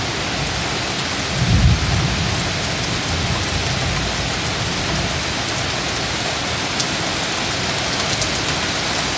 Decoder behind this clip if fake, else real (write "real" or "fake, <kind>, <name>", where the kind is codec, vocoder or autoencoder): real